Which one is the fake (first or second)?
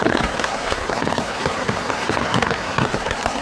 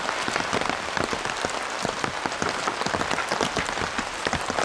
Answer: first